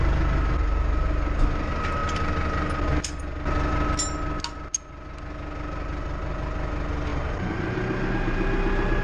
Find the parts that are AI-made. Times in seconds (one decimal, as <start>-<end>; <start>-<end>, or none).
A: 7.1-8.1